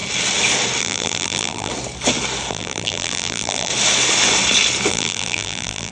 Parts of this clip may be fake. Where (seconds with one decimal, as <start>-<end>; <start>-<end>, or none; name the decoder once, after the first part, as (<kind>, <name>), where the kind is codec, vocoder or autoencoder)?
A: 0.8-1.7 (vocoder, BigVGAN v2); 2.5-3.7; 4.9-5.9